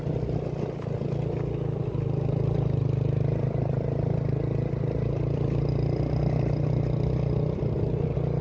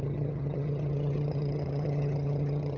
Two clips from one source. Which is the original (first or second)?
first